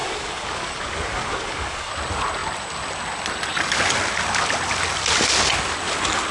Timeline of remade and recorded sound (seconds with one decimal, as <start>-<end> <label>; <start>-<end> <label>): 0.0-1.9 remade; 1.9-6.3 recorded